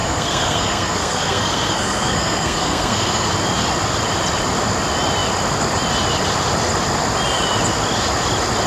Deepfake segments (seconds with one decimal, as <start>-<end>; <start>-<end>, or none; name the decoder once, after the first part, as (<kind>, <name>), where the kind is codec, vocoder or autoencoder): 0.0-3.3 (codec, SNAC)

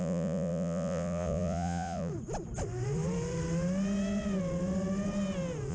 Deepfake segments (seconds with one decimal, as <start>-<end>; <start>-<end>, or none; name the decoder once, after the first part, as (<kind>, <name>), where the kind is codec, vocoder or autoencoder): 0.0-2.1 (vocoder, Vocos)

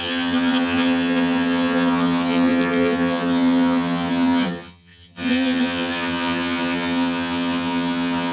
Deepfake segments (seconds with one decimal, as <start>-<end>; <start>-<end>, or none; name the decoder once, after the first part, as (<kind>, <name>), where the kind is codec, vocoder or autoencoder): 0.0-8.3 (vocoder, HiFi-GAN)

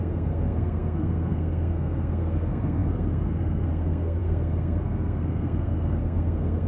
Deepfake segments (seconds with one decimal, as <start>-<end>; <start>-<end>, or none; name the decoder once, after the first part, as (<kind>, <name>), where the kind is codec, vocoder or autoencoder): 0.0-6.7 (codec, SNAC)